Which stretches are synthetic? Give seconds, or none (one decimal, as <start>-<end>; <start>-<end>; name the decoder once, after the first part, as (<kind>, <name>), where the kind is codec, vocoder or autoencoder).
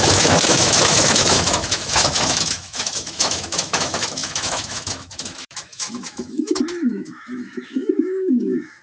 0.0-8.8 (autoencoder, DAC-VAE)